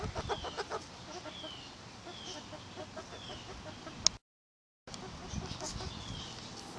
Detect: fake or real real